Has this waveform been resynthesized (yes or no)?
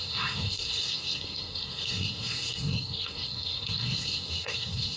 yes